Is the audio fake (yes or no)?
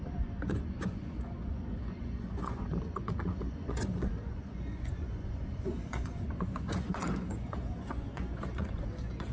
yes